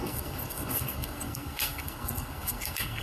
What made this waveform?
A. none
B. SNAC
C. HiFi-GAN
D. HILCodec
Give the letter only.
B